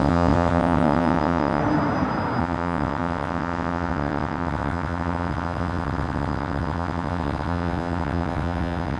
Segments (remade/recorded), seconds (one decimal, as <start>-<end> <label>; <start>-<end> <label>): 0.0-1.6 remade; 1.6-2.4 recorded; 2.4-9.0 remade